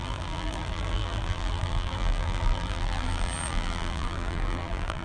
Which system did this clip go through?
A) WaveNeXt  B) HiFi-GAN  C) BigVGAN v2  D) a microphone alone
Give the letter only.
C